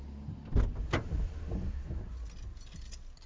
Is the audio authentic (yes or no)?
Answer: yes